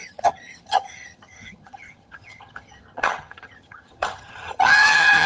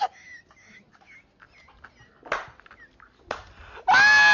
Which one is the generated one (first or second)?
first